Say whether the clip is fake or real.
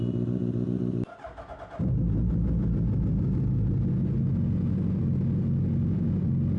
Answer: real